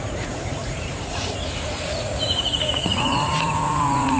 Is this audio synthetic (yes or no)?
yes